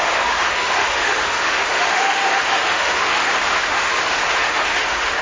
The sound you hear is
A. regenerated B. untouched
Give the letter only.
A